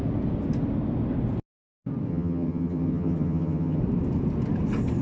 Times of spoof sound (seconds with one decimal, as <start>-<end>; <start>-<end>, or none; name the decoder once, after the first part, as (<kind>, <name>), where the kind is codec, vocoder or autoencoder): 2.1-3.8 (vocoder, HiFi-GAN)